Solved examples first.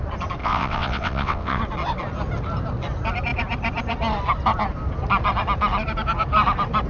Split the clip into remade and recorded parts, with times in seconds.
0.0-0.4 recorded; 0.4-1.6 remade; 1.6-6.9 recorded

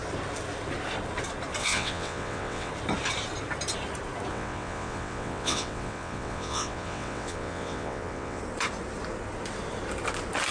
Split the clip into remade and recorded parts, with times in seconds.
0.0-1.6 recorded; 1.6-2.7 remade; 2.7-4.3 recorded; 4.3-8.4 remade; 8.4-10.5 recorded

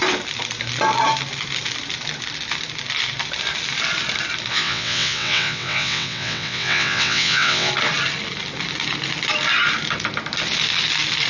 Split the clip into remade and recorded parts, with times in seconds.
0.0-4.5 recorded; 4.5-7.7 remade; 7.7-11.3 recorded

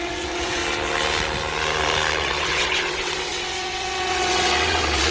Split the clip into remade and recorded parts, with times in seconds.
0.0-0.6 remade; 0.6-2.2 recorded; 2.2-5.1 remade

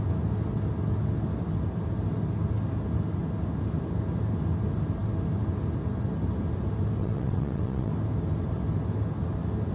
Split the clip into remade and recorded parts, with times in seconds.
0.0-7.0 recorded; 7.0-7.9 remade; 7.9-9.7 recorded

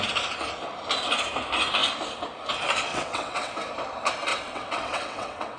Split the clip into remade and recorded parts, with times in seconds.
0.0-2.9 recorded; 2.9-3.5 remade; 3.5-4.3 recorded; 4.3-5.6 remade

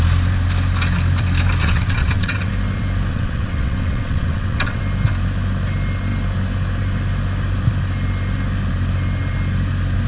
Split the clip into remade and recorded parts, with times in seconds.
0.0-1.6 recorded; 1.6-2.5 remade; 2.5-3.1 recorded; 3.1-4.8 remade; 4.8-10.1 recorded

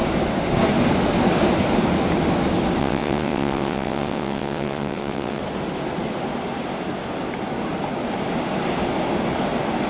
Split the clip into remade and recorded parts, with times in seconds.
0.0-2.8 recorded; 2.8-5.4 remade; 5.4-9.9 recorded